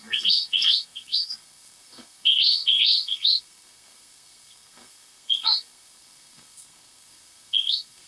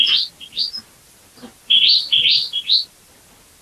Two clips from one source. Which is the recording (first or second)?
second